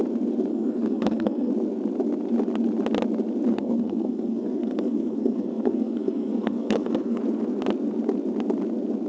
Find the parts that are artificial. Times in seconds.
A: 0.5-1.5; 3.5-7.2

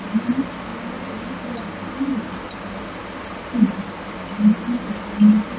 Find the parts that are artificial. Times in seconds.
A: none